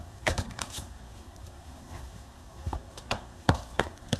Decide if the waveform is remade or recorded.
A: remade